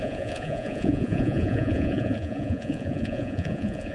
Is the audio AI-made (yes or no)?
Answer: yes